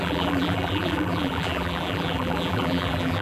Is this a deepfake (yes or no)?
yes